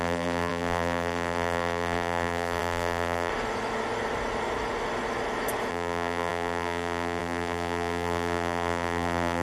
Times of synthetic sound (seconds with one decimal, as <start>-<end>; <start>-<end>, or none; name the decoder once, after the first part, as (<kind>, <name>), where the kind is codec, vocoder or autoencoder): 0.0-3.3 (vocoder, BigVGAN v2); 5.7-9.4